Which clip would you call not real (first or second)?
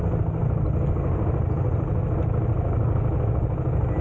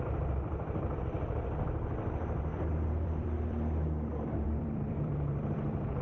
second